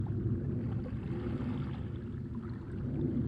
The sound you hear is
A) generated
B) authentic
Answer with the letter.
B